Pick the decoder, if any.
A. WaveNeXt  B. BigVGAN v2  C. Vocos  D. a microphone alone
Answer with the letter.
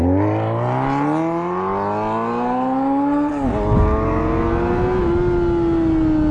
D